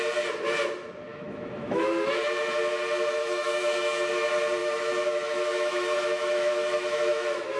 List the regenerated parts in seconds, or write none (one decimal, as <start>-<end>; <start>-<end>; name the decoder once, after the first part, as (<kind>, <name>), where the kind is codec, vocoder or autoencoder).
1.1-1.8 (autoencoder, DAC-VAE); 3.2-4.1; 4.6-7.6